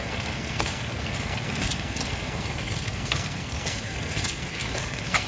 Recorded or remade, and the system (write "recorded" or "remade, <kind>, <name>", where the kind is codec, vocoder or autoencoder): remade, codec, SNAC